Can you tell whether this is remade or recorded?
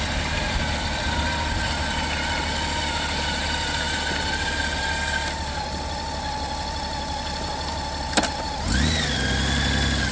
recorded